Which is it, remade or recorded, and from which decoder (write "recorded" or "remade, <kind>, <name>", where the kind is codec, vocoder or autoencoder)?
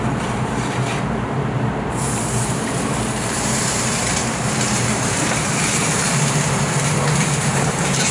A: remade, vocoder, BigVGAN v2